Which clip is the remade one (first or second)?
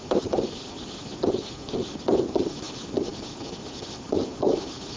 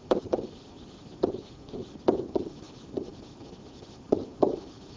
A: second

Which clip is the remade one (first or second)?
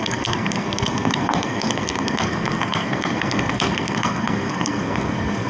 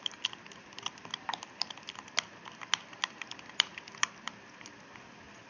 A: first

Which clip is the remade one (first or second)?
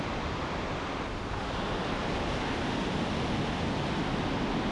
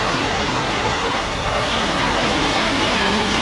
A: second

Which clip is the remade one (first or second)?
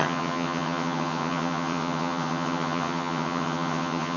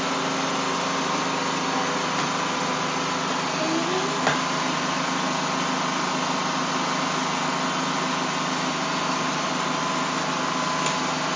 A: first